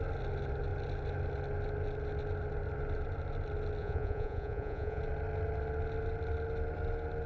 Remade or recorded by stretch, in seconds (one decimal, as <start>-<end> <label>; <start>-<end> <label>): 0.0-3.8 recorded; 3.8-5.0 remade; 5.0-7.3 recorded